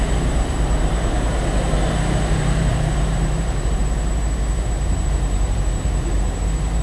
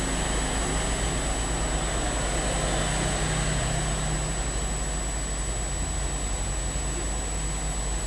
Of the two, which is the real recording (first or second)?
second